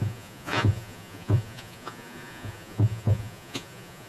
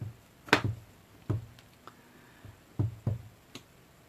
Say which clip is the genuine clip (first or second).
second